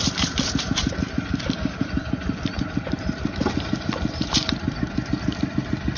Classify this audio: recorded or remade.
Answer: remade